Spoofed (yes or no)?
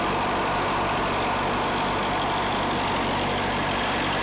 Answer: no